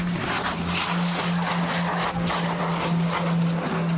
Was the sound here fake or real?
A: real